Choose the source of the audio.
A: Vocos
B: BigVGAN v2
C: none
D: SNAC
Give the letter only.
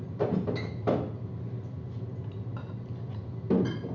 C